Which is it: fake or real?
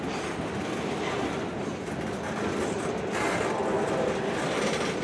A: real